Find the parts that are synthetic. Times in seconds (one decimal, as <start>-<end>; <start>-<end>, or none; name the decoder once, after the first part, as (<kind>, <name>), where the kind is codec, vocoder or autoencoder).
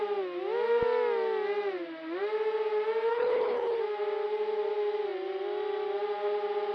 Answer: 3.1-3.8 (codec, HILCodec)